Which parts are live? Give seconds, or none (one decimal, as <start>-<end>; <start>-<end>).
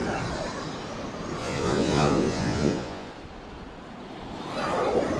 0.0-1.4; 3.1-5.2